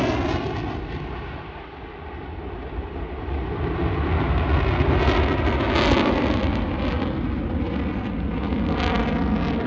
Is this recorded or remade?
recorded